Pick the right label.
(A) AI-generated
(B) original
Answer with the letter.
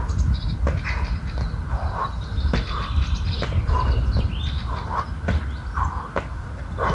B